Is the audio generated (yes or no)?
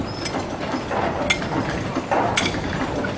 no